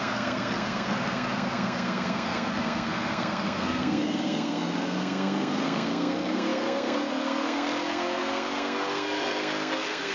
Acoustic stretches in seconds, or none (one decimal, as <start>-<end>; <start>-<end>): none